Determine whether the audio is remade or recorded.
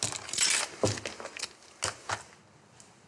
recorded